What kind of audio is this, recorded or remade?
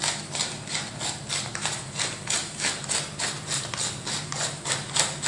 recorded